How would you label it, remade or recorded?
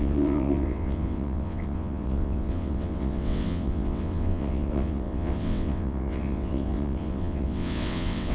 remade